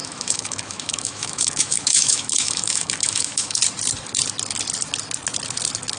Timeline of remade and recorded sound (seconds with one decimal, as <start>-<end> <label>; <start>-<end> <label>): 0.0-3.6 remade; 3.6-6.0 recorded